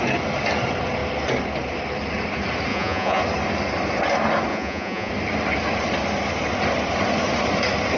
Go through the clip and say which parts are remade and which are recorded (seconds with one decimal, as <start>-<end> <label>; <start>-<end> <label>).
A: 0.0-2.7 recorded; 2.7-3.2 remade; 3.2-4.5 recorded; 4.5-5.1 remade; 5.1-8.0 recorded